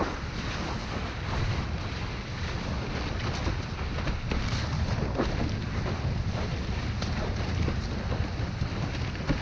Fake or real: real